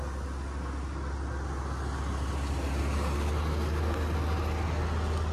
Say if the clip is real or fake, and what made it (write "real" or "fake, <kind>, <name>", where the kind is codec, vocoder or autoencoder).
real